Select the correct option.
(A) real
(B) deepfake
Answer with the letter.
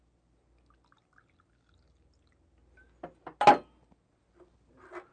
A